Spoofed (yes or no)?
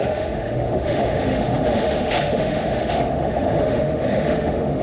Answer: yes